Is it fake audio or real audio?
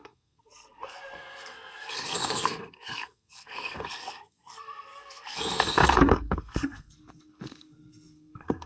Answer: fake